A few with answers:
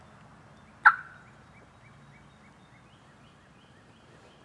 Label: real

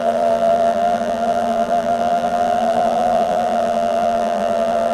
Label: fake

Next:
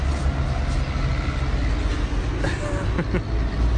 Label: real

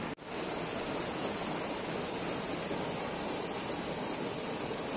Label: real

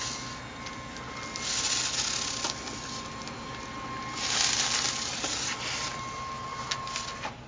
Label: real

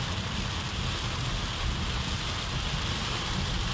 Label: real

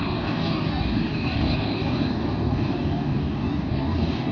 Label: fake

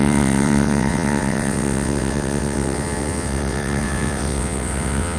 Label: fake